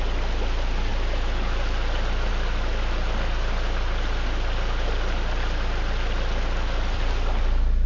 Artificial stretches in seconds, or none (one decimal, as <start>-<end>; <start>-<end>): none